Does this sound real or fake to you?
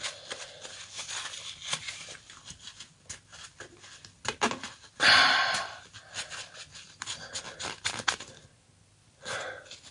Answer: real